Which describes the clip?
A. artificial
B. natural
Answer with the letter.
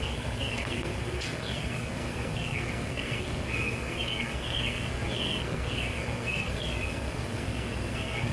A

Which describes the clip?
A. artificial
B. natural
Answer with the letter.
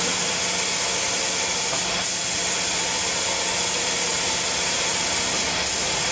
B